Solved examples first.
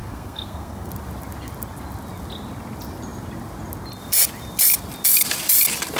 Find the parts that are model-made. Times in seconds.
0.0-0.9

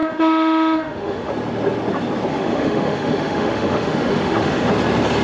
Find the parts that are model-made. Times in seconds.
0.0-1.3; 2.3-4.7

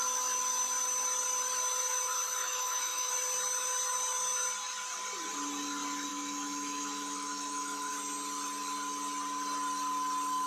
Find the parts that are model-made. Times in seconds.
2.4-3.1; 6.1-7.9

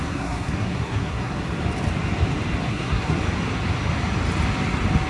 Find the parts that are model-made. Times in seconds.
0.0-1.3; 2.7-3.2

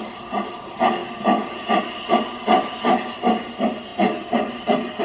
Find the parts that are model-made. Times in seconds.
1.0-2.4; 3.9-5.0

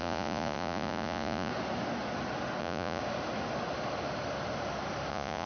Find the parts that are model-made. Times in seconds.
0.0-1.5; 2.6-3.0; 5.1-5.5

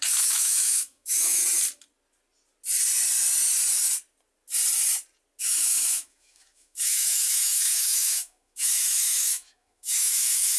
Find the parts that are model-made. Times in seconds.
0.0-1.4; 5.4-10.6